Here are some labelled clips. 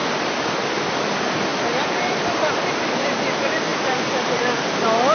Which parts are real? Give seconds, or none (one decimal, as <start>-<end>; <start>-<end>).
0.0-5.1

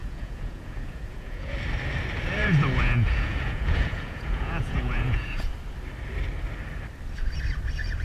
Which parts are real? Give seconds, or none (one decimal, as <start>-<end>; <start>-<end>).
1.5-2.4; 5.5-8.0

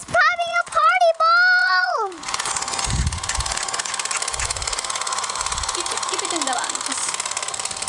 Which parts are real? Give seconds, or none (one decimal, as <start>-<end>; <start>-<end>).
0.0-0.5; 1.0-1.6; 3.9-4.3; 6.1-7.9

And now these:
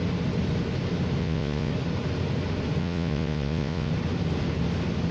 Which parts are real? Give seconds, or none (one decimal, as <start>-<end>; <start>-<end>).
0.0-1.2; 1.7-2.8; 3.9-5.1

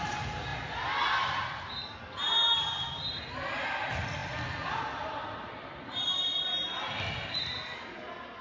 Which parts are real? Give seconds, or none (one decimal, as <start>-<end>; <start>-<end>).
0.0-8.4

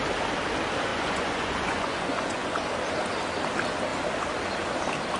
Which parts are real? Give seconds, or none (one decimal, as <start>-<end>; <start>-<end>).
0.0-0.9; 2.7-5.2

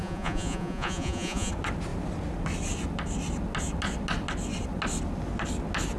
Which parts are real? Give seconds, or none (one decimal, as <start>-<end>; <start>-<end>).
1.5-6.0